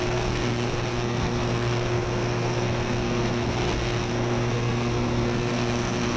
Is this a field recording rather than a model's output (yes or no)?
no